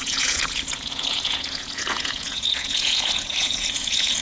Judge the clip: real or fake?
fake